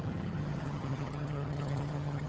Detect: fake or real fake